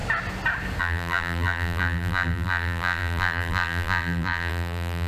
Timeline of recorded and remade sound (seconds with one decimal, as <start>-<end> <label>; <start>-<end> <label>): 0.0-0.8 recorded; 0.8-5.1 remade